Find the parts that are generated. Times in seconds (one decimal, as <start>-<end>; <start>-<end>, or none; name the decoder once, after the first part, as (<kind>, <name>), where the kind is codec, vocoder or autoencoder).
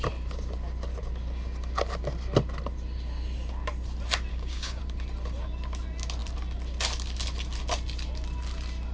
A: 4.3-4.8 (codec, DAC)